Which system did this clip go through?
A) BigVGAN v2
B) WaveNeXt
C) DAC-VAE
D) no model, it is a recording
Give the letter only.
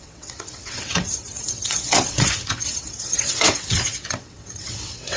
B